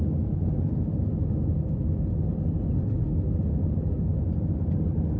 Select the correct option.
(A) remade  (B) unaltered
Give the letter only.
B